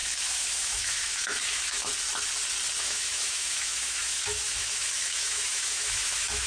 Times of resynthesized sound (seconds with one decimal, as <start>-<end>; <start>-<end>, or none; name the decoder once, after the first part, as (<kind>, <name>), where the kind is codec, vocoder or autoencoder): 0.0-1.9 (autoencoder, DAC-VAE); 2.8-6.5